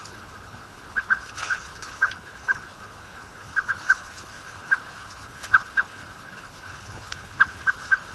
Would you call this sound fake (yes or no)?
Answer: yes